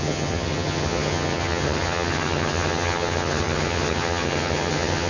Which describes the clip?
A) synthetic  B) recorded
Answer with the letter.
A